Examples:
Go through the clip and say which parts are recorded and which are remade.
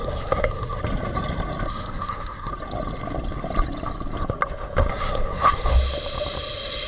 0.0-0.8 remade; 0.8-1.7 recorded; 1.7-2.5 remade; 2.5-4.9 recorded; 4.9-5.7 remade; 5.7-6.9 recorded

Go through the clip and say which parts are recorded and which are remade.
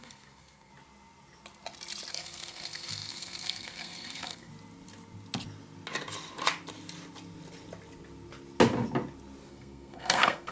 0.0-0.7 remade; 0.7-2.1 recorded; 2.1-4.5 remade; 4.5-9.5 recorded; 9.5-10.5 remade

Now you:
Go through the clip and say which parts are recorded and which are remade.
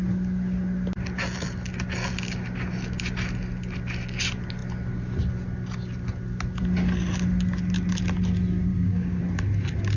0.0-8.7 recorded; 8.7-9.2 remade; 9.2-10.0 recorded